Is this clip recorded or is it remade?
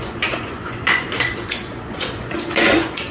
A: remade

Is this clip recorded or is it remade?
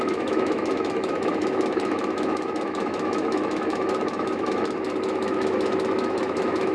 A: remade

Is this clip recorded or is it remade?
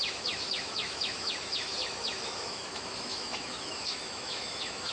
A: remade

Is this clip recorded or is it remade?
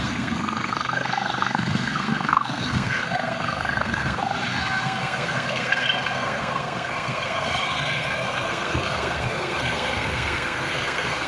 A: remade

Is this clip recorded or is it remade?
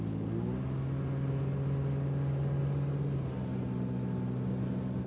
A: recorded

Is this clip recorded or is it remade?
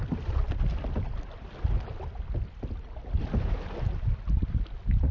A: recorded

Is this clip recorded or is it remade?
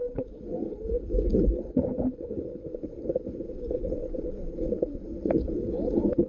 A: remade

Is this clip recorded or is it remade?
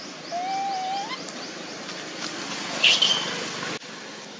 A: recorded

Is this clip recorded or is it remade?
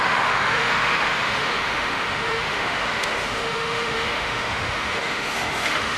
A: remade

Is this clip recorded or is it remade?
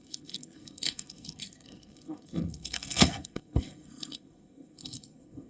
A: remade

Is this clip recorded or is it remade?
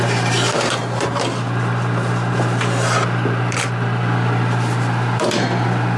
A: remade